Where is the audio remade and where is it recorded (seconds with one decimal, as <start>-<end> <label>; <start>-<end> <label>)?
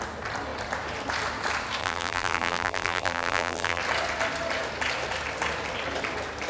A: 0.0-1.8 recorded; 1.8-3.8 remade; 3.8-6.5 recorded